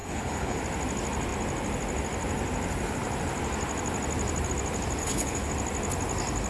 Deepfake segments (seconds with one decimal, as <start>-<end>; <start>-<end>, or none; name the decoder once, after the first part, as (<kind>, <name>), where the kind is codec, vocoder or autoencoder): 0.0-0.6 (codec, HILCodec); 5.0-5.5